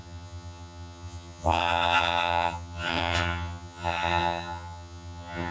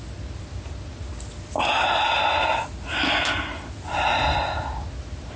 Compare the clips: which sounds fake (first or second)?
first